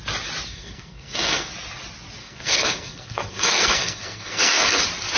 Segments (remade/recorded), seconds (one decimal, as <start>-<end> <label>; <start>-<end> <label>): 0.0-0.5 recorded; 0.5-1.5 remade; 1.5-2.2 recorded; 2.2-4.8 remade; 4.8-5.2 recorded